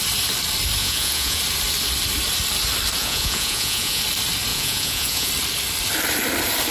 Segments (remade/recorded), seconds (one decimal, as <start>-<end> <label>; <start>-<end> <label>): 0.0-0.8 recorded; 0.8-1.4 remade; 1.4-3.0 recorded; 3.0-4.0 remade; 4.0-4.5 recorded; 4.5-5.3 remade; 5.3-6.7 recorded